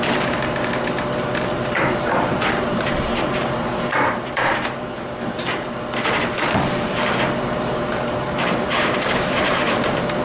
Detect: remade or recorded remade